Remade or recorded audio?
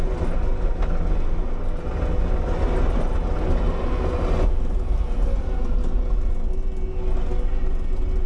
recorded